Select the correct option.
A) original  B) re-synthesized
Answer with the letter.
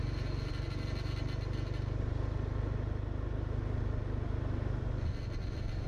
A